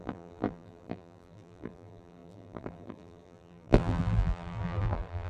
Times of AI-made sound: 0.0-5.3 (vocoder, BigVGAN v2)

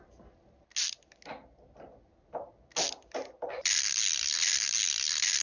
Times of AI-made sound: none

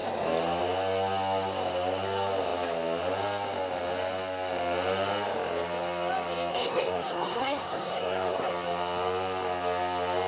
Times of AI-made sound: 6.5-8.5 (codec, SNAC)